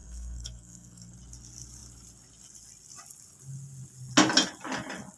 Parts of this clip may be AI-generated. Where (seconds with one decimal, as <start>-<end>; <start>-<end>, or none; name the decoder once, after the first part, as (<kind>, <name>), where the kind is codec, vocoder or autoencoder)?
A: 0.0-1.1 (codec, SNAC)